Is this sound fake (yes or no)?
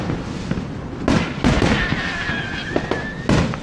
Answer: no